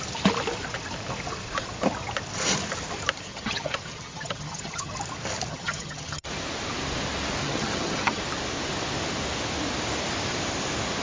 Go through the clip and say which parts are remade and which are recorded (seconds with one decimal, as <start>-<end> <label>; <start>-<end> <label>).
0.0-3.3 recorded; 3.3-4.9 remade; 4.9-5.5 recorded; 5.5-6.3 remade; 6.3-7.4 recorded; 7.4-8.2 remade; 8.2-11.0 recorded